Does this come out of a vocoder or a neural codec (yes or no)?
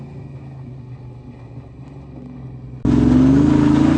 no